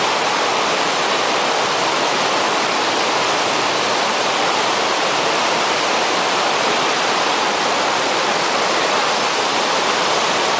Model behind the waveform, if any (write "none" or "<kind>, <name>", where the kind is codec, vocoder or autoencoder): vocoder, BigVGAN v2